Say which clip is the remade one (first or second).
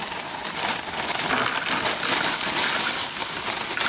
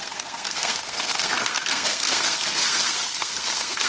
second